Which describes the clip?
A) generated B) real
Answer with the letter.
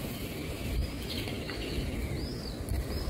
B